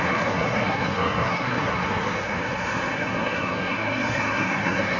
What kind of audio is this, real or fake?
fake